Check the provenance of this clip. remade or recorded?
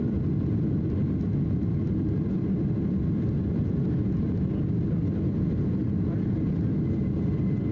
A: recorded